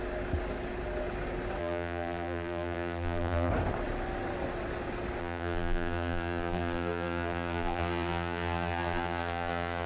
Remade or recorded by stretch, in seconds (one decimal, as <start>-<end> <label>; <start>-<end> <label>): 0.0-1.6 recorded; 1.6-3.5 remade; 3.5-5.2 recorded; 5.2-9.9 remade